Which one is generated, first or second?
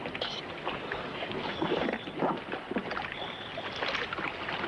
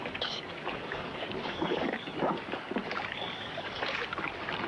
second